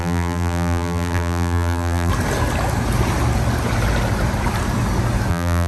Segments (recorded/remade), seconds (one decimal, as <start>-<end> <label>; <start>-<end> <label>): 0.0-2.1 remade; 2.1-5.3 recorded; 5.3-5.7 remade